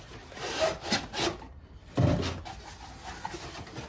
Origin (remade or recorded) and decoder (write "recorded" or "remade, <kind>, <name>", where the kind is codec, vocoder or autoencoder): recorded